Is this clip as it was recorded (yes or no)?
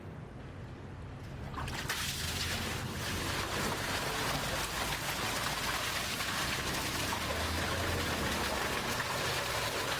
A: yes